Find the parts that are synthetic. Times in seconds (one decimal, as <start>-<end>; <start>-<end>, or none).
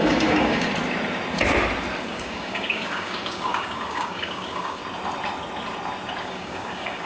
0.0-0.7; 2.0-4.8; 6.2-7.1